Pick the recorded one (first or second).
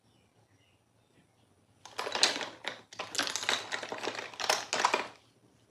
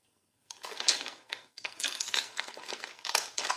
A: first